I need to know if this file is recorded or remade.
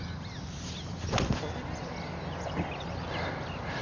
recorded